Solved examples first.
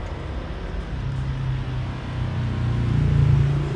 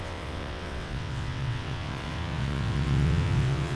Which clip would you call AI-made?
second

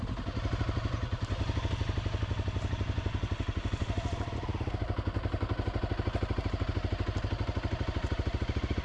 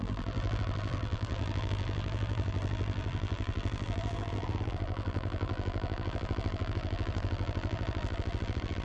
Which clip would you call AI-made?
second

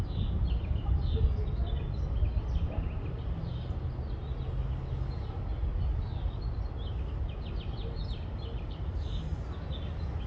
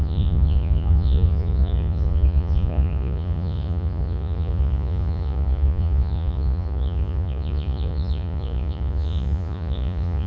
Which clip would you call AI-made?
second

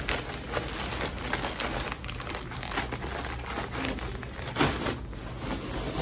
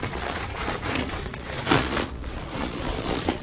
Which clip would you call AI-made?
second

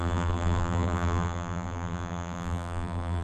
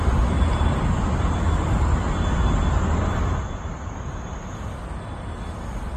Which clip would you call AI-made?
first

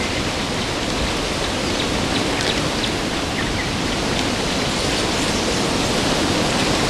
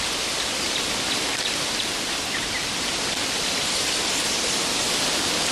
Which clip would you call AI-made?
second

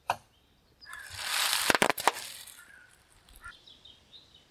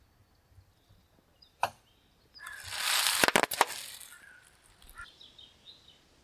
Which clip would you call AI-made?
first